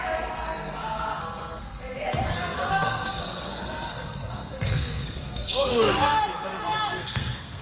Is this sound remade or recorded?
remade